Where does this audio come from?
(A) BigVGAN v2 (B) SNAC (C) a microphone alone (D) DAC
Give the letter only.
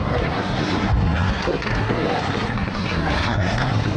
B